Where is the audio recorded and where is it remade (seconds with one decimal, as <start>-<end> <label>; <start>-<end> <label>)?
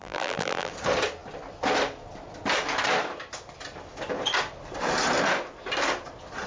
0.0-0.7 remade; 0.7-6.5 recorded